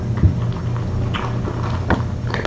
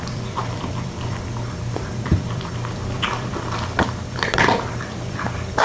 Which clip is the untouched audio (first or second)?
first